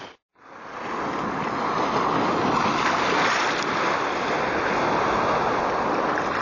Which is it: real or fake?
real